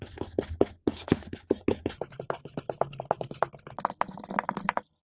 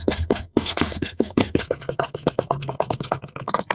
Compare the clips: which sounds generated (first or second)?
second